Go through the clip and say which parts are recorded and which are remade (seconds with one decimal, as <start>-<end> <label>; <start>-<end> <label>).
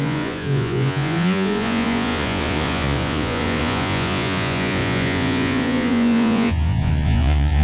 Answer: 0.0-7.6 remade